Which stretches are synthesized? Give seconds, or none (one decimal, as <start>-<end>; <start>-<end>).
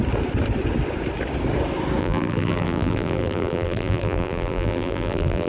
2.0-5.5